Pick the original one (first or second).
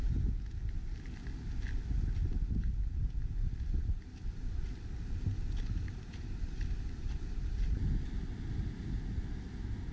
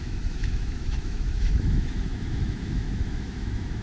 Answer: first